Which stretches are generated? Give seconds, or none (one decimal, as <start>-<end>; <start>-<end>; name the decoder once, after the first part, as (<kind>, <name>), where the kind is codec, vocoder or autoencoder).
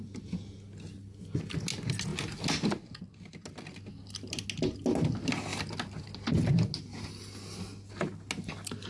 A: none